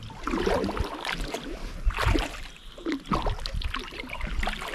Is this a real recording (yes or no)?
yes